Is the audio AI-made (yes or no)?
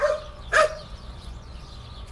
yes